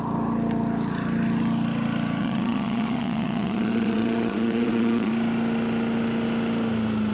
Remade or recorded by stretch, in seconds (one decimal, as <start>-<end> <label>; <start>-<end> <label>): 0.0-2.2 recorded; 2.2-5.1 remade; 5.1-7.1 recorded